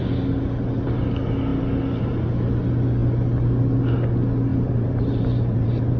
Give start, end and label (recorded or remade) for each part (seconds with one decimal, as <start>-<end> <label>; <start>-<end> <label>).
0.0-4.5 recorded; 4.5-6.0 remade